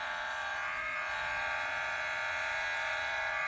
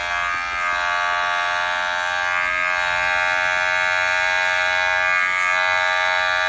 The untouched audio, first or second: second